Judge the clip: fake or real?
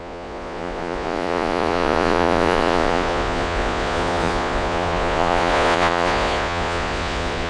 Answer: fake